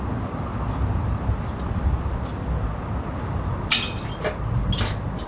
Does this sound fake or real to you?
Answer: real